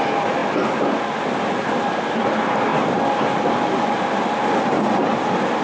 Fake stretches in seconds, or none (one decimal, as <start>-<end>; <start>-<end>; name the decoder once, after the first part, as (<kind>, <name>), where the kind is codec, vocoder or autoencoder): none